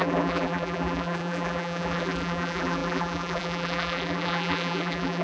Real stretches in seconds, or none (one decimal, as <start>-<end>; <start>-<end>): none